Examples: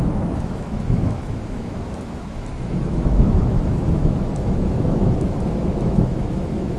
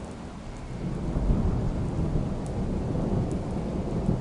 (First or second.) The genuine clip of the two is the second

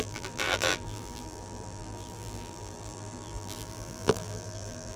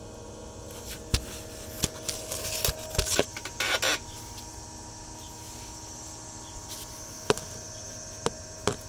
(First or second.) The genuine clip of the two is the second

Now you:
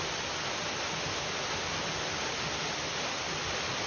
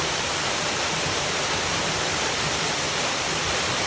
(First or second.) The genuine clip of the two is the first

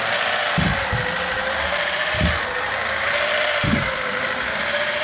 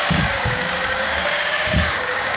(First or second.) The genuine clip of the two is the first